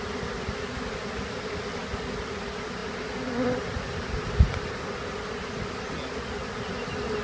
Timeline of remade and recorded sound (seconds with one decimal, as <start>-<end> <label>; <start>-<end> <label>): 0.0-7.2 recorded